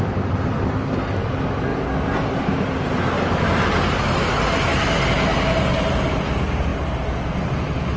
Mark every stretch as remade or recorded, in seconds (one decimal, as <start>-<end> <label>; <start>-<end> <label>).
0.0-8.0 recorded